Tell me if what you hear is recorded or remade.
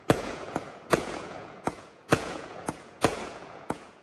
remade